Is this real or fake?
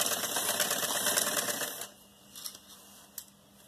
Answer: real